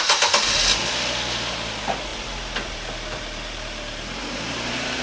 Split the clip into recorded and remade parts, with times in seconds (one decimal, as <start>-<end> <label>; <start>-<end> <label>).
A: 0.0-2.1 recorded; 2.1-5.0 remade